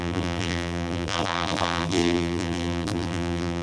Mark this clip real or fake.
fake